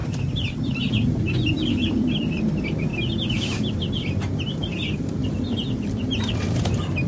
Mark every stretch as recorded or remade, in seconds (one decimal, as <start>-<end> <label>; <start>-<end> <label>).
0.0-2.9 remade; 2.9-3.8 recorded; 3.8-7.1 remade